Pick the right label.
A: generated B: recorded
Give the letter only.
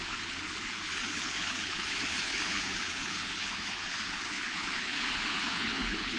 A